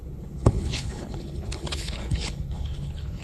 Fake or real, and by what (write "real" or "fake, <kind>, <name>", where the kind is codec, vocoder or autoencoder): fake, codec, HILCodec